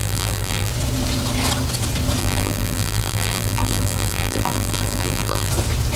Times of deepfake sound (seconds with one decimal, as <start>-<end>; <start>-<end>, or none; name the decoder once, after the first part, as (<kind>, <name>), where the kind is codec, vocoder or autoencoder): 0.0-0.7 (vocoder, BigVGAN v2); 2.2-5.5